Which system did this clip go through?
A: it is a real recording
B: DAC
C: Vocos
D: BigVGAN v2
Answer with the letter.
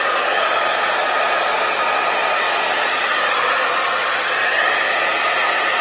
A